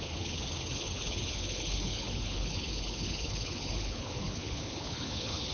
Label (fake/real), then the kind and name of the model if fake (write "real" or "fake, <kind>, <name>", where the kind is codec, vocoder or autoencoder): fake, codec, HILCodec